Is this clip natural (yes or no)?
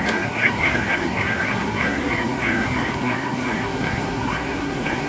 no